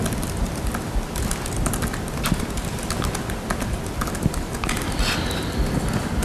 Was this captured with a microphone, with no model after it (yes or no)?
yes